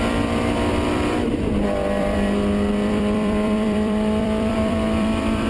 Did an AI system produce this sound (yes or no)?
yes